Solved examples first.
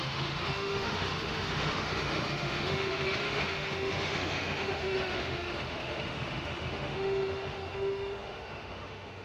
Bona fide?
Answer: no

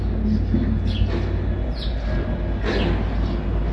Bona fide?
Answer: yes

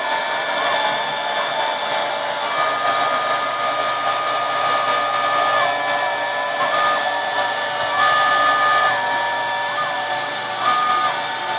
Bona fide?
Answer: yes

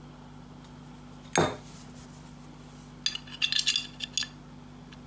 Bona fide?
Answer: yes